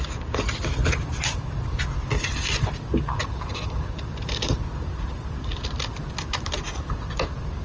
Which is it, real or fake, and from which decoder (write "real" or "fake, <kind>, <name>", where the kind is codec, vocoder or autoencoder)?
real